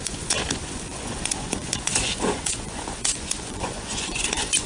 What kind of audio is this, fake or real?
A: fake